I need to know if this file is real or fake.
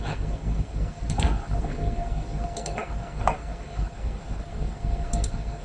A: fake